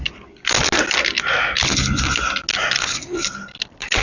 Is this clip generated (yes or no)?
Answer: no